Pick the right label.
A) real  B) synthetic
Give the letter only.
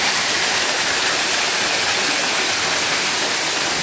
B